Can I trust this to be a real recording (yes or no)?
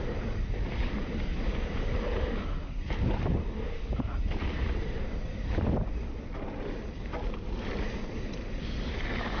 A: no